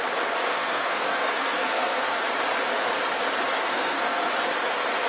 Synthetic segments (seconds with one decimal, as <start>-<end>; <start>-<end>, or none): 0.5-2.2; 3.7-4.3